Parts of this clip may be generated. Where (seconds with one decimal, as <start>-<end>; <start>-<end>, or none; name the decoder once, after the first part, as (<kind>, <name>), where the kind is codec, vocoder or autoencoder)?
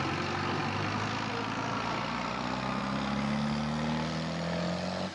none